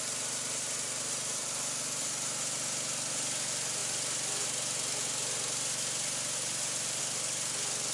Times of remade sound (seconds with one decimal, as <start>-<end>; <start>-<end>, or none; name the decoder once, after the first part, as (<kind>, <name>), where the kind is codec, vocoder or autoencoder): none